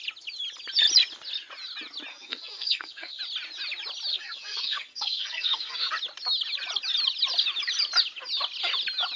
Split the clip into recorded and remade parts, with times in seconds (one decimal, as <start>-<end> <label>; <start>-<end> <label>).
0.0-2.1 recorded; 2.1-3.2 remade; 3.2-4.1 recorded; 4.1-5.9 remade; 5.9-9.2 recorded

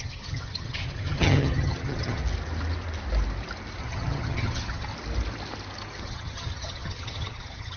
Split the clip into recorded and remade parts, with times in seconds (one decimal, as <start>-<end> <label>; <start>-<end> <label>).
0.0-2.2 remade; 2.2-3.8 recorded; 3.8-4.9 remade; 4.9-6.0 recorded; 6.0-7.8 remade

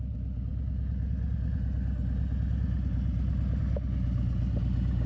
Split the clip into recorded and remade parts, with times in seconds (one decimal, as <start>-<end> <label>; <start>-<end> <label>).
0.0-5.1 recorded